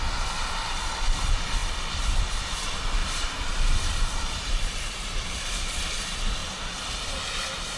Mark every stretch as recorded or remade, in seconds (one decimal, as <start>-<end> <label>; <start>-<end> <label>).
0.0-3.0 recorded; 3.0-5.8 remade; 5.8-7.8 recorded

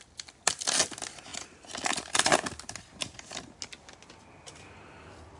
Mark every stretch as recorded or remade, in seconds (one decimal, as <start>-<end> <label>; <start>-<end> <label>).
0.0-5.4 recorded

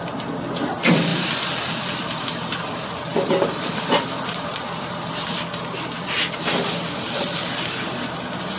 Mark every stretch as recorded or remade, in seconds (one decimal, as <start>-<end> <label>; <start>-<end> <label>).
0.0-1.1 recorded; 1.1-1.7 remade; 1.7-3.1 recorded; 3.1-4.9 remade; 4.9-8.6 recorded

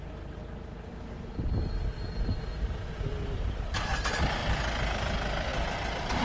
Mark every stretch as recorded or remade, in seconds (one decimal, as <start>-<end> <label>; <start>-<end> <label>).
0.0-6.2 recorded

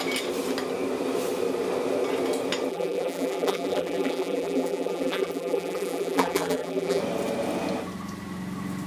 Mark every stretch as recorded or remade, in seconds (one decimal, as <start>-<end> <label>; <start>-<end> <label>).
0.0-2.7 recorded; 2.7-7.0 remade; 7.0-8.9 recorded